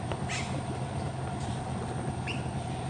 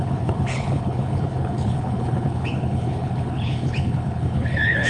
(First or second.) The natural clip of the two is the first